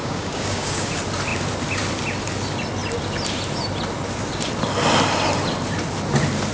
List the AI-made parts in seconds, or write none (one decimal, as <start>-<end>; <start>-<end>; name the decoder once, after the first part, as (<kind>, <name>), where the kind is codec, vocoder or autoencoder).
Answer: 0.0-0.9 (codec, DAC)